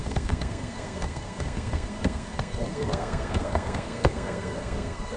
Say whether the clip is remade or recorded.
remade